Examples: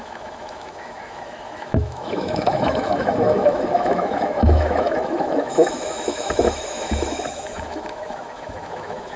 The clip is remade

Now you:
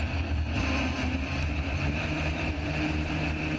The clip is recorded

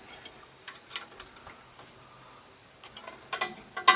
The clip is recorded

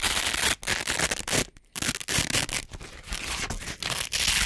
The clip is recorded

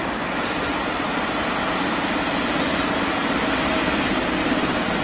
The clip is recorded